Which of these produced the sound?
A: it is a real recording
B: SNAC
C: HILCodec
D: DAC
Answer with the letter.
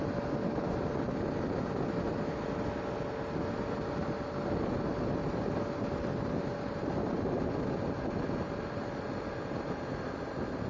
A